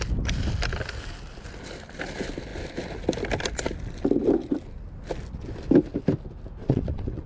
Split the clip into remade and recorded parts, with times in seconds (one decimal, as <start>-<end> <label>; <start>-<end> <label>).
0.0-6.6 recorded; 6.6-7.3 remade